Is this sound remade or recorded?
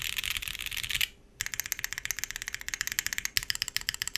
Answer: recorded